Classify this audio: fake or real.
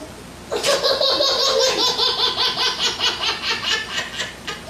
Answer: real